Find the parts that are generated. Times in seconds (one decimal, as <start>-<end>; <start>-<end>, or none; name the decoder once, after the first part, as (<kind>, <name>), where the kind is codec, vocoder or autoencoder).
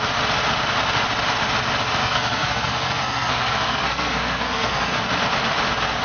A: 2.0-5.0 (codec, SNAC)